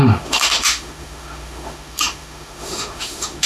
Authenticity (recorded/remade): remade